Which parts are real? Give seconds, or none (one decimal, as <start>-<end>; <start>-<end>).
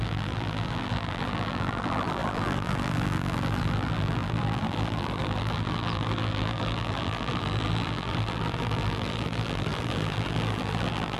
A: none